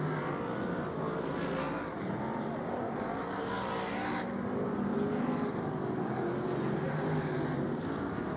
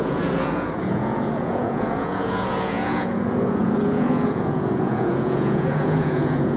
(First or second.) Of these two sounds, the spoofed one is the second